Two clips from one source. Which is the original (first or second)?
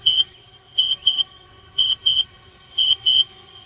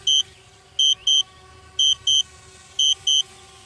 second